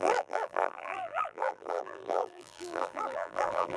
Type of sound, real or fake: fake